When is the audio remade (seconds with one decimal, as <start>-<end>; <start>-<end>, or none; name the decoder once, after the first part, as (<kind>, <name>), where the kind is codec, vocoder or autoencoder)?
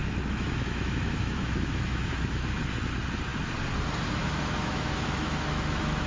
0.0-2.6 (autoencoder, DAC-VAE); 4.2-6.1